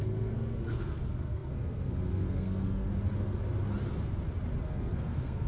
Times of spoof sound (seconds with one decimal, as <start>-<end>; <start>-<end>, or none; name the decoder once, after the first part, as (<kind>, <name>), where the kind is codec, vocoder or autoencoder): 0.0-2.9 (codec, SNAC); 4.6-5.5